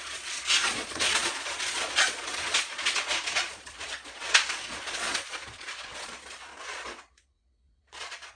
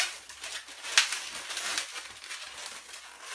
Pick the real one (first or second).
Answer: second